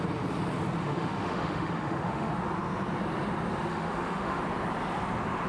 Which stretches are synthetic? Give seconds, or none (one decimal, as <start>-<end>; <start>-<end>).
0.8-2.3; 3.7-4.4